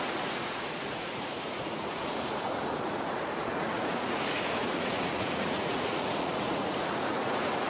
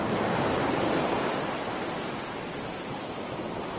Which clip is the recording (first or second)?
second